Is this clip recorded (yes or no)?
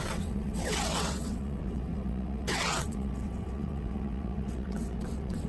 no